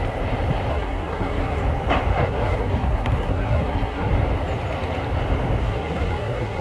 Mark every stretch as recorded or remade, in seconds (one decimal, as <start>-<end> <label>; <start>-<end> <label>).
0.0-0.7 recorded; 0.7-1.6 remade; 1.6-2.1 recorded; 2.1-4.1 remade; 4.1-5.6 recorded; 5.6-6.6 remade